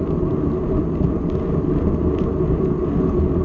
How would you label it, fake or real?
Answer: real